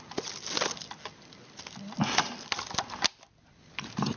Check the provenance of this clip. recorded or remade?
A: recorded